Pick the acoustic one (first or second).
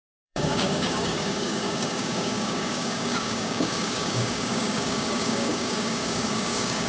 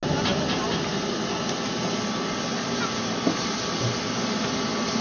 second